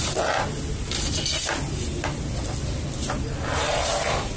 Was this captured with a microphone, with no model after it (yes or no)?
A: yes